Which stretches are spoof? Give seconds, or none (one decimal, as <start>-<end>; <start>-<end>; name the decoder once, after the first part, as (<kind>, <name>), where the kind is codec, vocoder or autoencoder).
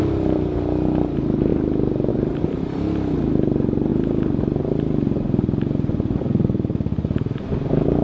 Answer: none